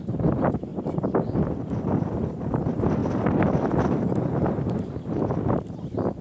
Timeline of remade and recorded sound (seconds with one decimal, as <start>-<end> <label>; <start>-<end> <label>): 0.0-6.2 recorded